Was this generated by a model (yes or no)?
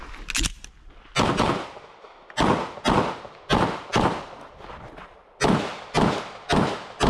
no